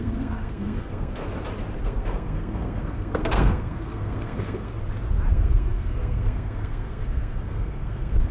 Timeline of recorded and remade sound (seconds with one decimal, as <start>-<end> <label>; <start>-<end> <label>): 0.0-1.2 remade; 1.2-1.8 recorded; 1.8-4.7 remade; 4.7-5.3 recorded; 5.3-8.3 remade